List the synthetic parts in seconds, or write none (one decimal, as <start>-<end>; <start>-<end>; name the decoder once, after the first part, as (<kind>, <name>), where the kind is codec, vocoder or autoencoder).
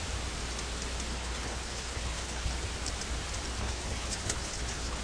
1.1-2.5 (codec, HILCodec); 3.6-5.0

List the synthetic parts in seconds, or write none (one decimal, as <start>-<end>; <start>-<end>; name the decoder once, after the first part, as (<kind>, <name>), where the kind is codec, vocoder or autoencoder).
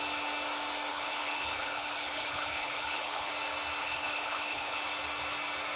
0.9-3.3 (codec, HILCodec); 3.8-4.8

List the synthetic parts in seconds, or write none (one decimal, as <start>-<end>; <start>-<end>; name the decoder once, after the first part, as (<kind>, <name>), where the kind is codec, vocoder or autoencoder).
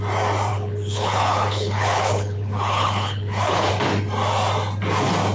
0.5-3.7 (codec, HILCodec)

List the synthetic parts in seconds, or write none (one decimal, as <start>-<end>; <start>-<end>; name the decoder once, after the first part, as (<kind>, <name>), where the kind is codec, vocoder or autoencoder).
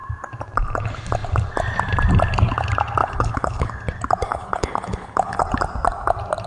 3.0-3.7 (codec, HILCodec); 4.3-5.4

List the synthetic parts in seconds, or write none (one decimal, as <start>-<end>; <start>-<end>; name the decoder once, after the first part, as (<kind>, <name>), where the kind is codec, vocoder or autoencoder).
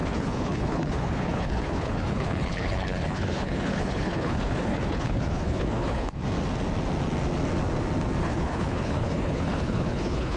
0.0-6.2 (codec, HILCodec); 8.2-10.4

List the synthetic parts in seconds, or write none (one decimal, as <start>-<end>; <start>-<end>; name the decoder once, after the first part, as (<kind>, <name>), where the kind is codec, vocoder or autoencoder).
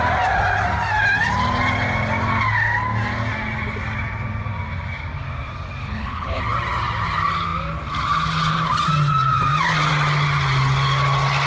5.8-6.4 (codec, HILCodec)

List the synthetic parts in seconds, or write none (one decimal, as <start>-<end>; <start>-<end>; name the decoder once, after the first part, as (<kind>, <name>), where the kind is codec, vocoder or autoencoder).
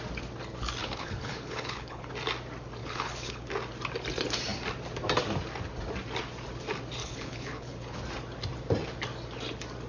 0.8-2.1 (codec, HILCodec); 2.8-3.5; 7.0-8.0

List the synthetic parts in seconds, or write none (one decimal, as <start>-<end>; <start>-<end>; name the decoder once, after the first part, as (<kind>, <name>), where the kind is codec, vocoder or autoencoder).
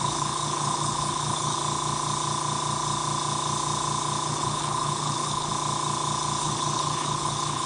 0.0-1.6 (codec, HILCodec); 4.3-5.5; 6.4-7.7